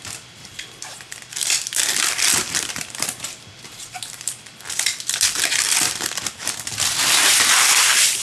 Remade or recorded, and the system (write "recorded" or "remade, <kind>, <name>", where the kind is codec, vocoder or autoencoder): remade, vocoder, BigVGAN v2